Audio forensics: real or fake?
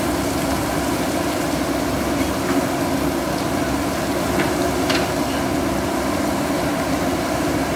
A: real